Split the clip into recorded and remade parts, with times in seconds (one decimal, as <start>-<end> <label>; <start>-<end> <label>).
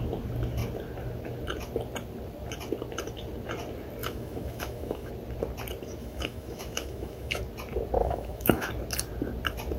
0.0-4.0 recorded; 4.0-5.1 remade; 5.1-6.0 recorded; 6.0-7.4 remade; 7.4-8.0 recorded; 8.0-8.7 remade; 8.7-9.8 recorded